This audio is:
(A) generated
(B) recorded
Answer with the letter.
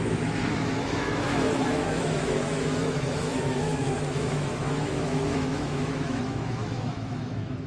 A